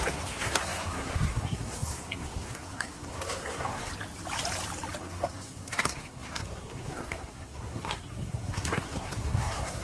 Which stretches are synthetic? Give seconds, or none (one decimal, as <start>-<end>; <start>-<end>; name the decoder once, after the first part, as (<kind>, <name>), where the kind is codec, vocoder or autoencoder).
0.0-3.9 (codec, SNAC); 5.0-9.8